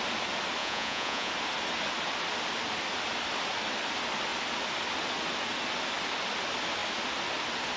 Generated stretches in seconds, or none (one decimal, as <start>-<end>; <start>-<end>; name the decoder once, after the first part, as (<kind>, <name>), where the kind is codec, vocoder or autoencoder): 0.6-1.3 (vocoder, Vocos)